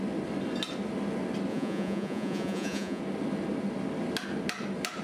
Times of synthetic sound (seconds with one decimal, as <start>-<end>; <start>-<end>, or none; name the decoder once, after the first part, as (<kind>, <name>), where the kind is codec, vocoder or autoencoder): 1.5-3.0 (vocoder, Vocos)